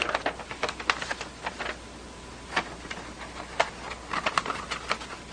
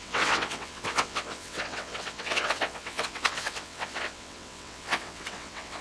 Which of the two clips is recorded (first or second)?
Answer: first